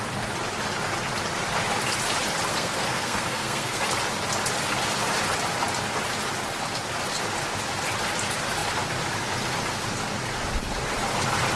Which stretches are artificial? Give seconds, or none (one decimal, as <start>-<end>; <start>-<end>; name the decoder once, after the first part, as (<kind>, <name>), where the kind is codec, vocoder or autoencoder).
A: 2.5-3.8 (codec, SNAC)